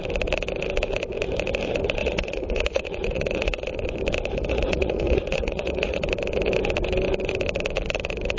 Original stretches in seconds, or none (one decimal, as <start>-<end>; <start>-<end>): 0.0-2.0; 3.7-4.4; 6.1-8.4